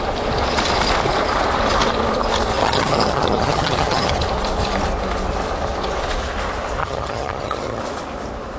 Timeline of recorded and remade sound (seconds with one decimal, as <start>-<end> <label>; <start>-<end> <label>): 0.0-2.6 recorded; 2.6-4.1 remade; 4.1-6.8 recorded; 6.8-7.8 remade; 7.8-8.6 recorded